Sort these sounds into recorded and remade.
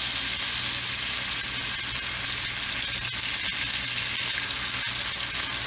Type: recorded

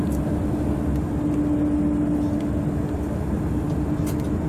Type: recorded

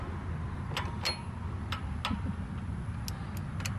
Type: recorded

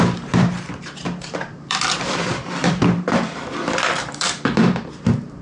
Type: remade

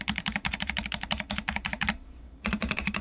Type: remade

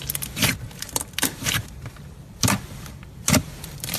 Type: remade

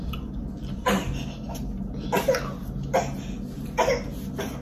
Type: recorded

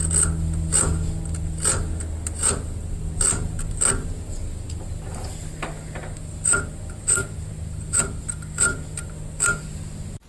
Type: recorded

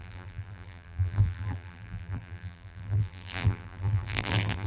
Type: remade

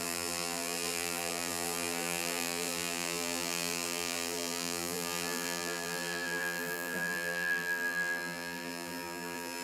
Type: remade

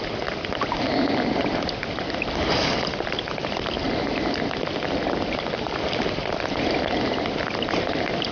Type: recorded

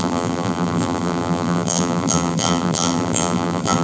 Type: remade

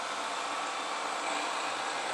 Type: recorded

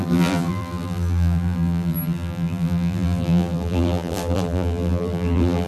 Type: remade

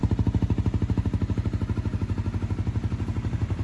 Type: recorded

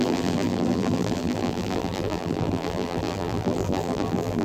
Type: remade